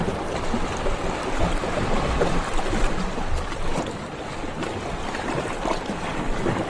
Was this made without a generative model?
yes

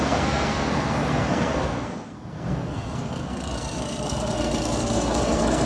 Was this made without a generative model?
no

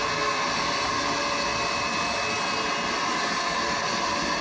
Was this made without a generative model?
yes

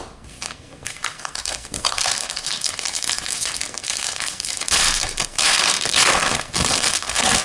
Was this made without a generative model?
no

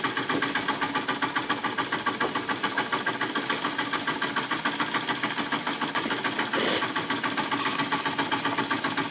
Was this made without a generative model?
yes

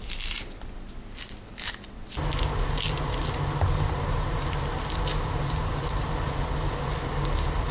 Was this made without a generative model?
yes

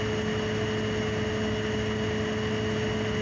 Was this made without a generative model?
yes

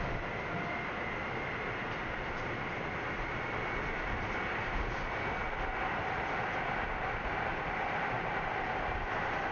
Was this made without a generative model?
yes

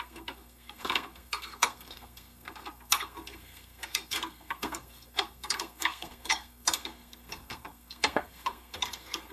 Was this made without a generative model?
no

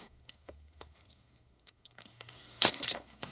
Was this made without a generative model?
no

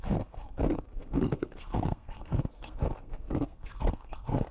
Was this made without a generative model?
no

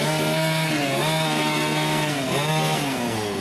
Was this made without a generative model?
no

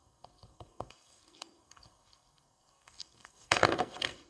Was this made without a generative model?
no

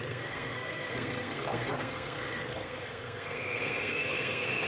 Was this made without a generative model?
no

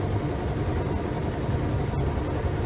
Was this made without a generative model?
yes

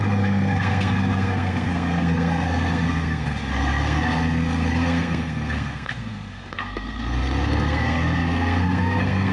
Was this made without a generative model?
no